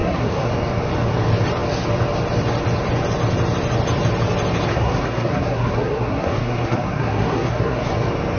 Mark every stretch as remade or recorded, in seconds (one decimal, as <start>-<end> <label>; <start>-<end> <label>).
0.0-0.5 remade; 0.5-4.7 recorded; 4.7-7.9 remade; 7.9-8.4 recorded